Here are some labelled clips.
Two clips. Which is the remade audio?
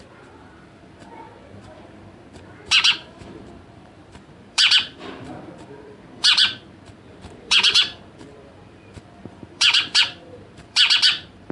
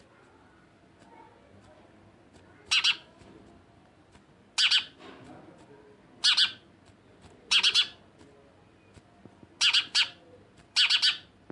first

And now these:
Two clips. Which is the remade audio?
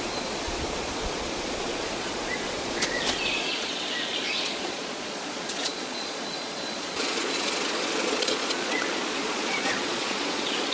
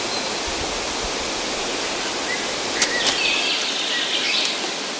first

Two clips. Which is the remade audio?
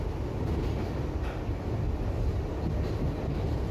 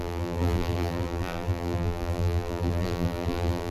second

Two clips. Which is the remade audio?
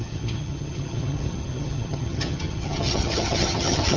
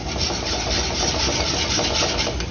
first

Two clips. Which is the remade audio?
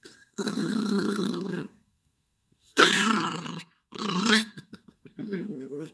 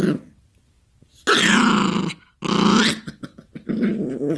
first